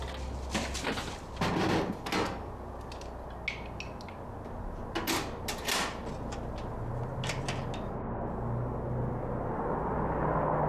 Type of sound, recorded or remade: recorded